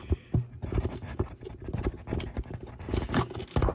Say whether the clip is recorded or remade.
recorded